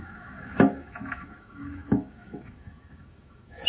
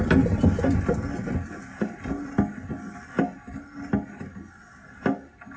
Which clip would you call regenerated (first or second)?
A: first